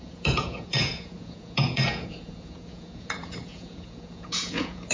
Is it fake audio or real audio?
fake